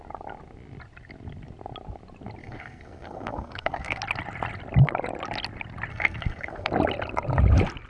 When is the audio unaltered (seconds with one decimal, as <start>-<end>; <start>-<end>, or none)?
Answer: 0.0-2.4; 4.0-5.9; 6.7-7.9